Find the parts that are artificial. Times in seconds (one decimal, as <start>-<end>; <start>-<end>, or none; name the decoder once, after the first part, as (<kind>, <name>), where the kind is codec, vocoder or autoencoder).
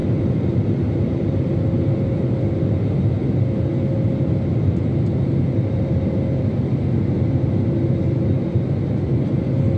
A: none